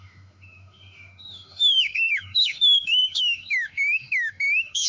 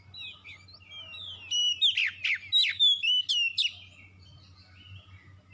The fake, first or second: first